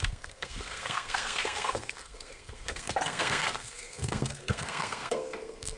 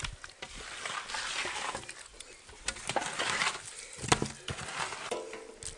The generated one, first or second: first